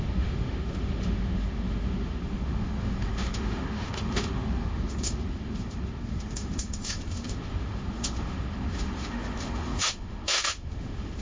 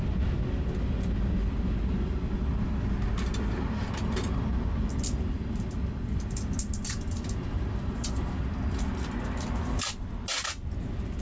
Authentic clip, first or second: second